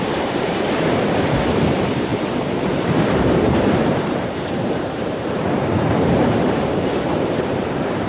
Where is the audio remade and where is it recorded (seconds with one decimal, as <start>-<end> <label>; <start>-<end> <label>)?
0.0-8.1 remade